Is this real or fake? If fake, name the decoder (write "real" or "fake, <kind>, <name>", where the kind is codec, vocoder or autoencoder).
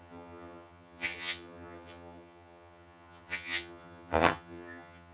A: fake, vocoder, HiFi-GAN